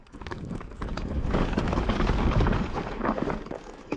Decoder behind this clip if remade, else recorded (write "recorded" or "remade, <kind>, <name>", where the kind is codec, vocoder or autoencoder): remade, codec, DAC